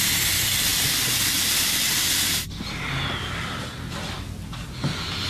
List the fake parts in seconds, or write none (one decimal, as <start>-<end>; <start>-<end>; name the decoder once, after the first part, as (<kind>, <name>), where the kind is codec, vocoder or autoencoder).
none